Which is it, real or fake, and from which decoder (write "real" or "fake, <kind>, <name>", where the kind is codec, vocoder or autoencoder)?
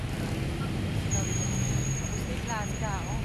real